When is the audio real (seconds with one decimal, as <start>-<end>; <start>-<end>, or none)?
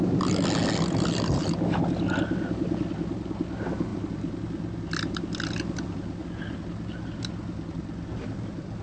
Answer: 0.0-8.8